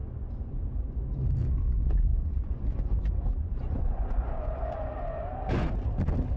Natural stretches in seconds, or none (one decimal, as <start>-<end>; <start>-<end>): 0.6-2.1; 5.7-6.4